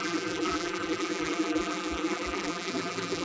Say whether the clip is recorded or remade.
remade